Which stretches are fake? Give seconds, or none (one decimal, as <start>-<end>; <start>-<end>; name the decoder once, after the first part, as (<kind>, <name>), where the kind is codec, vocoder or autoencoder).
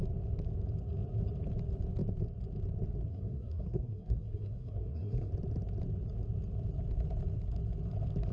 3.1-5.3 (codec, SNAC)